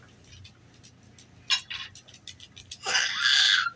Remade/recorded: recorded